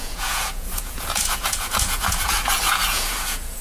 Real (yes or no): no